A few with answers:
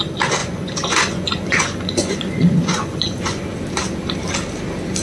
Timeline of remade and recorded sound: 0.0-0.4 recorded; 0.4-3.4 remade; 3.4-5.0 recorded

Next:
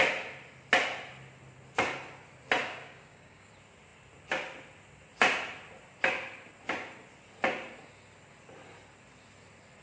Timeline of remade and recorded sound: 0.0-2.6 recorded; 2.6-3.5 remade; 3.5-9.8 recorded

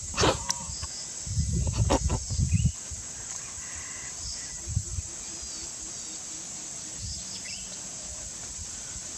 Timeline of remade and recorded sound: 0.0-9.2 recorded

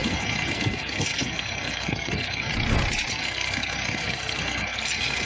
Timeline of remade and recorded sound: 0.0-2.5 remade; 2.5-3.1 recorded; 3.1-5.3 remade

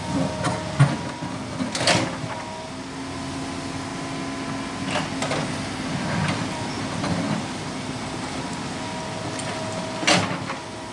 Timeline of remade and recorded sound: 0.0-10.9 recorded

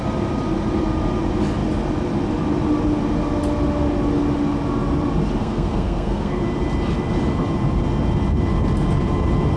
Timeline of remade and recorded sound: 0.0-5.4 recorded; 5.4-6.4 remade; 6.4-9.6 recorded